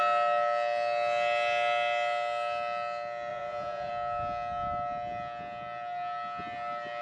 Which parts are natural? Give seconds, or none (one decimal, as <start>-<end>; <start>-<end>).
0.0-3.3; 3.9-7.0